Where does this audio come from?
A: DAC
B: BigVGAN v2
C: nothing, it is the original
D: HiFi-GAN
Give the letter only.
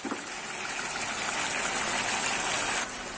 C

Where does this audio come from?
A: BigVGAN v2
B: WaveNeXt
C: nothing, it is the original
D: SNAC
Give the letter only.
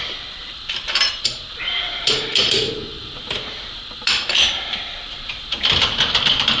A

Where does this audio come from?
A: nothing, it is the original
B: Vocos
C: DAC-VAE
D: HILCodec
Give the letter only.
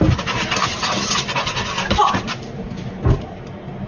A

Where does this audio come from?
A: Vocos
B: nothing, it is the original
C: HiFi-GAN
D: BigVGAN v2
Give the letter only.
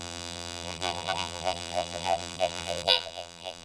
D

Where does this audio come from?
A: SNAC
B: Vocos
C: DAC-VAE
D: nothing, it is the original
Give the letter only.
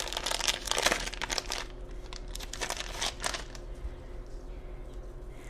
D